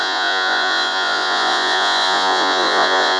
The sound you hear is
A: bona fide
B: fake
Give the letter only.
B